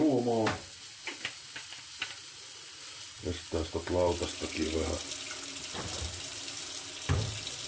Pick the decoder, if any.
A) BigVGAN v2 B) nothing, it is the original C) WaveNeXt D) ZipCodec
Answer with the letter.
B